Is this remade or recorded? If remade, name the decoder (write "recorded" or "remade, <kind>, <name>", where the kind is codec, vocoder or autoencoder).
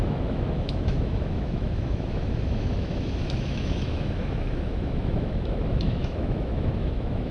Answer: remade, autoencoder, DAC-VAE